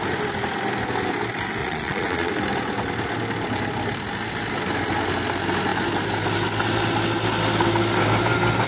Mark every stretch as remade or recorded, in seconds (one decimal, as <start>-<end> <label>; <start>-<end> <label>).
0.0-1.6 recorded; 1.6-2.3 remade; 2.3-8.7 recorded